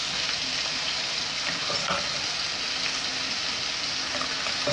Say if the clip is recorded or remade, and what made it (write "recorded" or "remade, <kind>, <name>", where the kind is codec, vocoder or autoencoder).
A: recorded